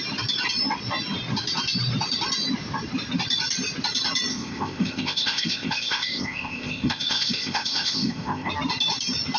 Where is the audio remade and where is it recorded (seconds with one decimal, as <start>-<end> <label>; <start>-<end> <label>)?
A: 0.0-4.3 recorded; 4.3-8.5 remade; 8.5-9.4 recorded